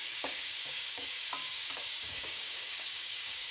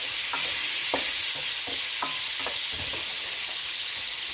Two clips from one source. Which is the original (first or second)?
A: second